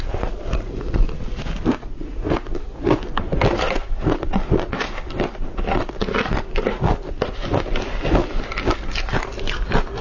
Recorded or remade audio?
recorded